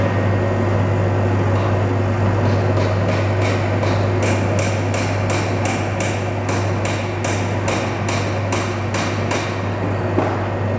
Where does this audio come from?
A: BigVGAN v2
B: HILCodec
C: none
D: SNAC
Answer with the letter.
C